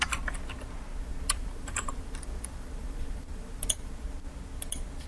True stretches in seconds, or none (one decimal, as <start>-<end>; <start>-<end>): 0.0-0.9; 4.0-5.1